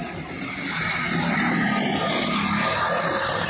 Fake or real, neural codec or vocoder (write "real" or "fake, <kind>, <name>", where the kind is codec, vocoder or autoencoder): real